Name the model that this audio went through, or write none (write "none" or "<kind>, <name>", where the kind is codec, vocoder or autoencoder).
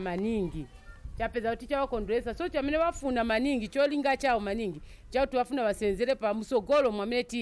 none